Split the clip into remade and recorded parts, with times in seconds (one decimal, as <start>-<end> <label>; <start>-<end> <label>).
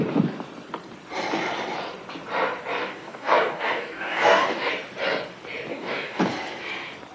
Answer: 0.0-2.8 recorded; 2.8-4.7 remade; 4.7-5.7 recorded; 5.7-6.2 remade; 6.2-7.1 recorded